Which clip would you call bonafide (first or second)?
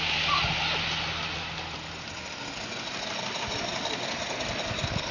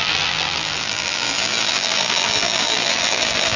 first